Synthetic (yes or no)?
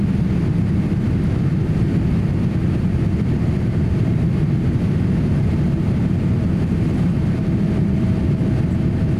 no